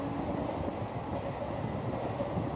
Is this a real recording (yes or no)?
yes